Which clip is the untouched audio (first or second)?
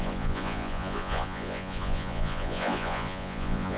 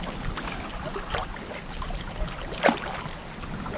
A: second